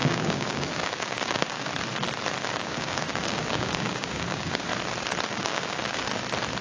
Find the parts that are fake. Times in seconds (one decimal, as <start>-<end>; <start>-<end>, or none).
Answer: 0.0-1.7; 2.4-4.7; 5.3-6.1